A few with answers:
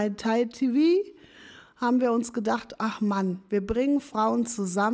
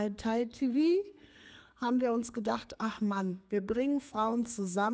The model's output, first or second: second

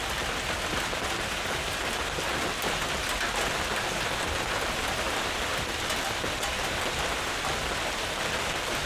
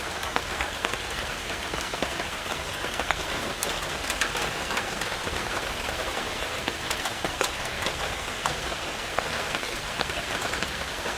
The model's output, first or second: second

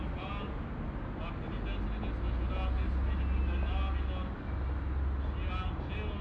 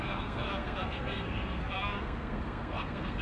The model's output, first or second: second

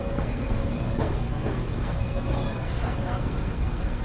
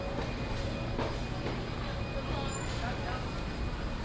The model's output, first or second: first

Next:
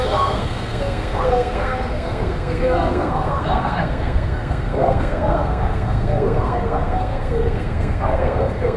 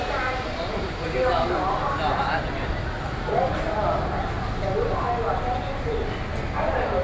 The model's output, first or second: first